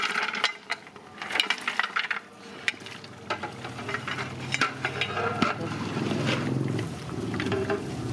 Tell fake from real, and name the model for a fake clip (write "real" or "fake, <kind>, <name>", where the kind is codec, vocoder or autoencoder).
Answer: real